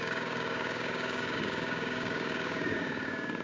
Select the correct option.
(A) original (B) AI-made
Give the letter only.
B